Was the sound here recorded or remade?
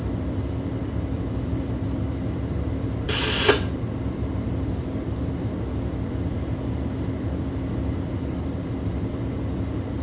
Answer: remade